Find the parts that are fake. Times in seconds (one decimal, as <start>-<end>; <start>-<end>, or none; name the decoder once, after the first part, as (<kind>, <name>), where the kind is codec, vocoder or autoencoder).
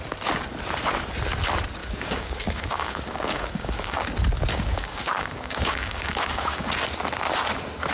1.8-4.1 (codec, DAC); 4.5-6.7